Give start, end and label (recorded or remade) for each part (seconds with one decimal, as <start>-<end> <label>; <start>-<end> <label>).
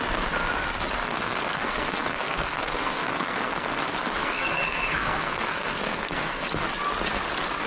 0.0-1.0 recorded; 1.0-3.8 remade; 3.8-4.2 recorded; 4.2-6.4 remade; 6.4-7.7 recorded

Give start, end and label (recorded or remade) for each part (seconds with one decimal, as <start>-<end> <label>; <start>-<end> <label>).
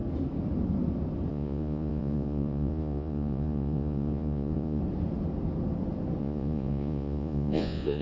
0.0-1.3 recorded; 1.3-4.8 remade; 4.8-6.2 recorded; 6.2-8.0 remade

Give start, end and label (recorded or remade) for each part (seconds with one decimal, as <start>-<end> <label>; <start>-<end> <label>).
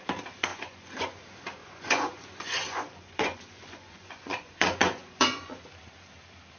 0.0-0.5 recorded; 0.5-1.2 remade; 1.2-1.6 recorded; 1.6-5.6 remade; 5.6-6.6 recorded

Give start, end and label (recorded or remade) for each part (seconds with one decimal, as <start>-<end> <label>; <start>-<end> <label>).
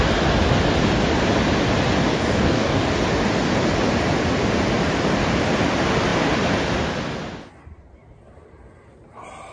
0.0-2.1 recorded; 2.1-2.9 remade; 2.9-9.5 recorded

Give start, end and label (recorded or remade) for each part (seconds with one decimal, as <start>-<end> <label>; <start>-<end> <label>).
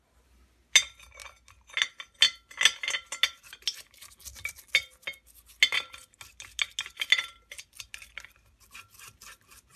0.0-9.8 recorded